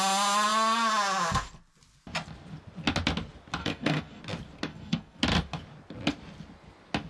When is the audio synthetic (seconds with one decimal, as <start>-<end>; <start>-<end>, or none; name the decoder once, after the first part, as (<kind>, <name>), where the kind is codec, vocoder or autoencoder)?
3.6-4.2 (codec, SNAC); 4.7-5.2